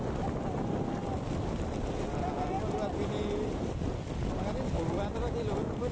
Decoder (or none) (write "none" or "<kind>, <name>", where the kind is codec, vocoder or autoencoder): none